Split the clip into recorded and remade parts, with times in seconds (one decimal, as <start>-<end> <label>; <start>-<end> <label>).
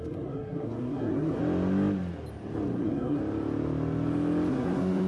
0.0-1.4 remade; 1.4-2.8 recorded; 2.8-3.2 remade; 3.2-4.5 recorded; 4.5-5.1 remade